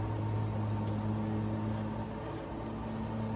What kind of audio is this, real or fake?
real